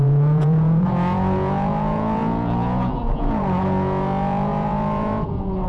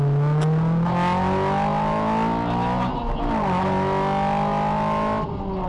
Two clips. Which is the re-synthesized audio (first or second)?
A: first